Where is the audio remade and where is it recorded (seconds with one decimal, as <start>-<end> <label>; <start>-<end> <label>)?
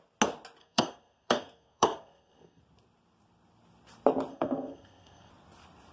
0.0-0.6 recorded; 0.6-2.6 remade; 2.6-4.3 recorded; 4.3-5.3 remade; 5.3-5.9 recorded